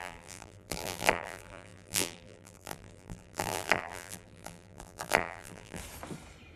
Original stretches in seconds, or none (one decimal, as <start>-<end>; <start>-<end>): 5.8-6.6